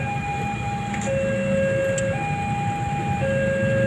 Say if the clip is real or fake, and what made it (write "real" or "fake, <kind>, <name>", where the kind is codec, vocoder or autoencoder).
real